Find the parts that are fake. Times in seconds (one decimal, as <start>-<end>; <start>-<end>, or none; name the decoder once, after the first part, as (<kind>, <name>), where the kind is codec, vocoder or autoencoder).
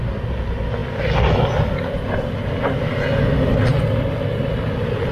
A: none